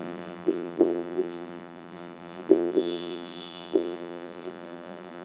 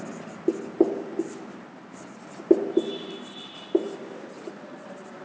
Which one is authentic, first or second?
second